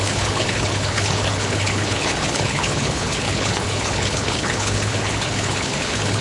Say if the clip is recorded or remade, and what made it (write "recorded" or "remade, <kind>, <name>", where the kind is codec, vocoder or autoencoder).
remade, codec, HILCodec